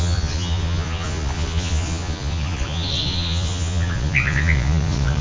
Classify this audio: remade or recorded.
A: remade